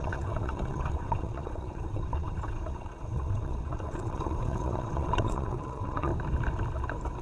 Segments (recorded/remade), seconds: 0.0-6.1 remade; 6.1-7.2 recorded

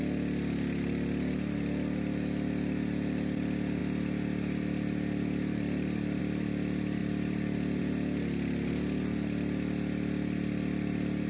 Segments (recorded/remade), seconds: 0.0-11.3 recorded

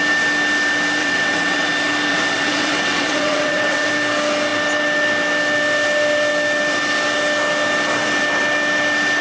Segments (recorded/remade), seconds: 0.0-1.0 recorded; 1.0-1.7 remade; 1.7-2.1 recorded; 2.1-3.9 remade; 3.9-9.2 recorded

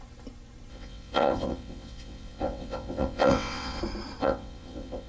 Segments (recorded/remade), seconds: 0.0-0.7 recorded; 0.7-3.8 remade; 3.8-4.2 recorded; 4.2-5.1 remade

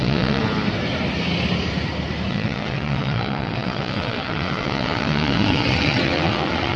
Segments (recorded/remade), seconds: 0.0-0.4 remade; 0.4-2.3 recorded; 2.3-6.8 remade

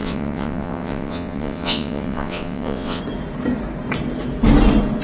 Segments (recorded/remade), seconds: 0.0-3.0 remade; 3.0-5.0 recorded